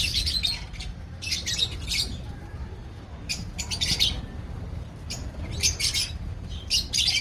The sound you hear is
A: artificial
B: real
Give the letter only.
A